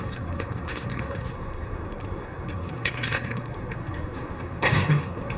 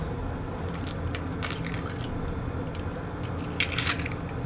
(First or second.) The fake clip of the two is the first